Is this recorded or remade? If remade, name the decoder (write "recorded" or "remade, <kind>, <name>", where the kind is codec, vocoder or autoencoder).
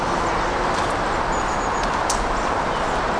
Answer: recorded